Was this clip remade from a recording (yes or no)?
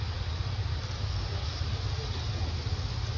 no